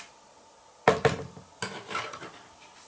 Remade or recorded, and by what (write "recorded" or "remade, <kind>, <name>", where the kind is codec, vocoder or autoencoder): recorded